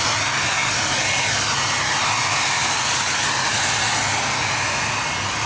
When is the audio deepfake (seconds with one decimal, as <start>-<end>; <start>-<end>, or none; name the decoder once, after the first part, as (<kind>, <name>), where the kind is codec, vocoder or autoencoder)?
none